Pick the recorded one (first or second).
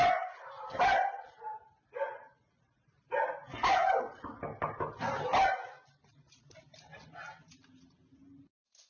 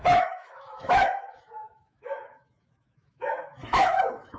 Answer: first